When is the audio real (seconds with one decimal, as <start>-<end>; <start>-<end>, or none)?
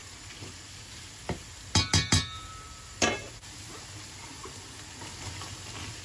0.0-6.0